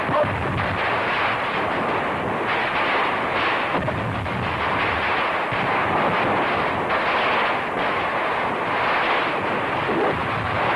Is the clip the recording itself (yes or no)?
yes